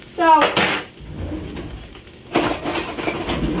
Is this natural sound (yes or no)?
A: yes